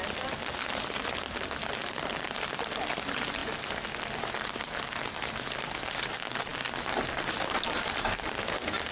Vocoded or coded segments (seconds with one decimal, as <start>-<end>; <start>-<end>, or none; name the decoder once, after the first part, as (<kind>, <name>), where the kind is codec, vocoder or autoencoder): 1.6-2.5 (vocoder, BigVGAN v2); 3.4-6.1; 6.5-8.3